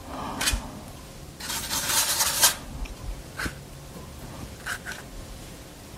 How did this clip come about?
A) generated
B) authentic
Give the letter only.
A